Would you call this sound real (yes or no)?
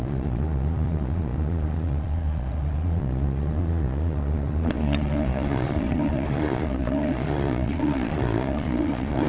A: no